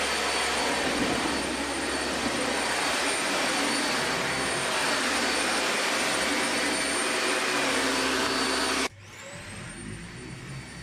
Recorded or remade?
recorded